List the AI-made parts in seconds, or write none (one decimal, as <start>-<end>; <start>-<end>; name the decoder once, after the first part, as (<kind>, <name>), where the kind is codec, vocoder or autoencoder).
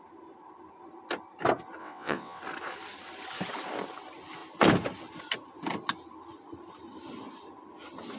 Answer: 1.8-2.4 (vocoder, WaveNeXt)